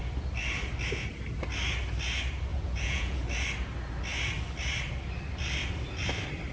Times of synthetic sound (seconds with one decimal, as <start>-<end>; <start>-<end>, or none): 2.5-3.2